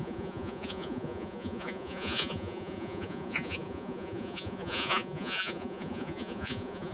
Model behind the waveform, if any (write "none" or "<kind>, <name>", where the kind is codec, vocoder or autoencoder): vocoder, Vocos